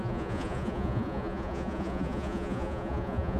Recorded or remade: remade